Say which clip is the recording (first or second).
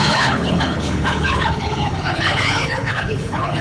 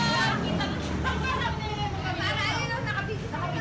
second